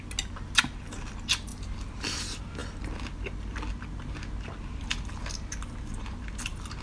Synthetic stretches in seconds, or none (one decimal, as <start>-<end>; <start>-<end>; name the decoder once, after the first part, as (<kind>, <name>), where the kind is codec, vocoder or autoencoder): 1.5-2.2 (vocoder, BigVGAN v2)